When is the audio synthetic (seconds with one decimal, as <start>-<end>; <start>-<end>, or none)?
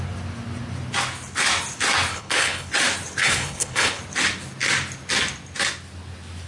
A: 2.1-2.7; 3.2-4.0